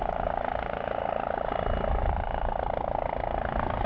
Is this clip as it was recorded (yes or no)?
yes